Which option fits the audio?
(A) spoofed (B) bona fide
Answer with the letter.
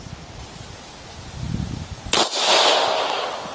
B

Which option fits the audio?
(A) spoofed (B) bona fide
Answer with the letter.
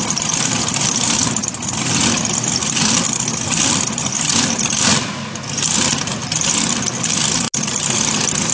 B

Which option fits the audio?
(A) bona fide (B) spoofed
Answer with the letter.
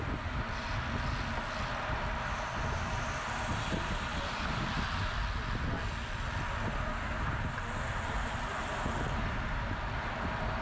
A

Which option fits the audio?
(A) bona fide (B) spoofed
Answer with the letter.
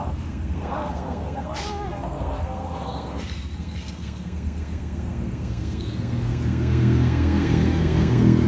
B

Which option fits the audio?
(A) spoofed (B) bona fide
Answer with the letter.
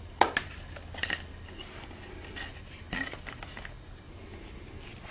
B